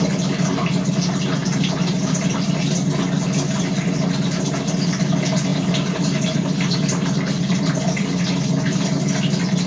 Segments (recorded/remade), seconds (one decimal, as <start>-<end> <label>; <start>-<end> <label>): 0.0-1.4 recorded; 1.4-2.9 remade; 2.9-5.5 recorded; 5.5-9.0 remade; 9.0-9.7 recorded